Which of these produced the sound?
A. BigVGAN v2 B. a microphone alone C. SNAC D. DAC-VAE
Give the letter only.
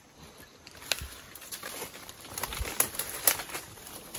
B